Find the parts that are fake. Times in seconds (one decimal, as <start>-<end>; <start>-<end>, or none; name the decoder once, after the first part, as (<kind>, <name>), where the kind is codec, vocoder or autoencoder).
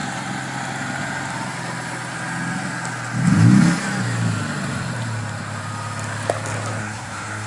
6.8-7.5 (codec, SNAC)